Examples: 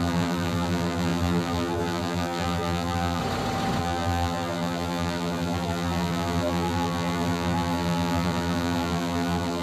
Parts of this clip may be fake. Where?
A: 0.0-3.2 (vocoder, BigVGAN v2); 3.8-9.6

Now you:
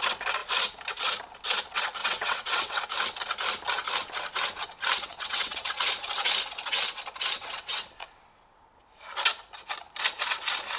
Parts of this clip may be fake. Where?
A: 2.0-2.8 (vocoder, WaveNeXt); 5.1-5.8; 7.4-9.0

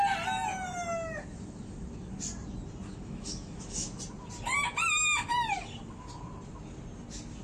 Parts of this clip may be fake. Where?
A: 1.3-2.2 (autoencoder, DAC-VAE); 2.9-4.0

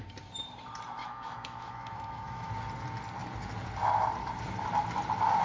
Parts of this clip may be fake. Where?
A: 1.0-2.5 (autoencoder, DAC-VAE)

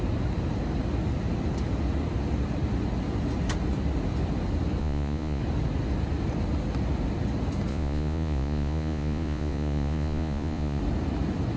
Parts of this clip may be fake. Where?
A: 4.8-5.4 (vocoder, Vocos); 7.7-10.8

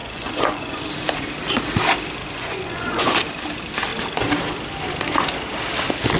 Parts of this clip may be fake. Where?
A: 0.0-0.9 (vocoder, Vocos); 2.2-3.2

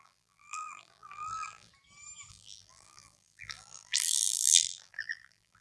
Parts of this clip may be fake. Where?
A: 0.0-1.7 (vocoder, BigVGAN v2); 2.3-5.6